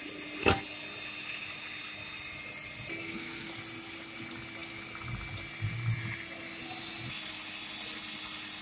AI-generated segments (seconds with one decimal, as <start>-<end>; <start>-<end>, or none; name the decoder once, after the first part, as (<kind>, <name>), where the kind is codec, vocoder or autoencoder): 3.0-3.5 (codec, SNAC)